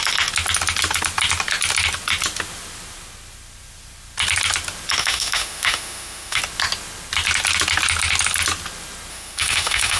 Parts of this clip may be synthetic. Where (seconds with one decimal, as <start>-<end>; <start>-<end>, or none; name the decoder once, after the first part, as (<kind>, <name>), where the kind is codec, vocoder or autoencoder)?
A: 5.0-6.4 (autoencoder, DAC-VAE); 9.1-10.0